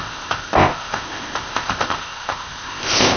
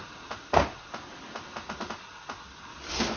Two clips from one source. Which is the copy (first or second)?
first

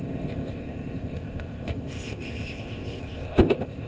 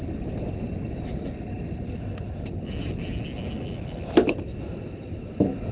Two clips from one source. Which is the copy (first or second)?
first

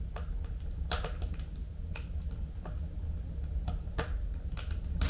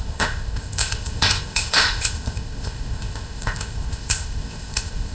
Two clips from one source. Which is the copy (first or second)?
second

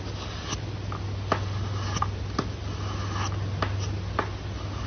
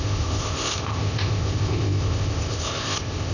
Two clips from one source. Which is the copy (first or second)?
second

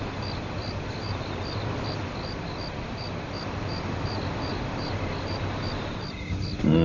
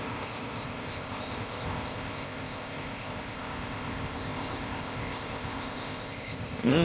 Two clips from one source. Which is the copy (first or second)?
second